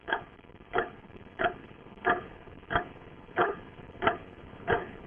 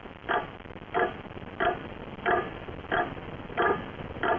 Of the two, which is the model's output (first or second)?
first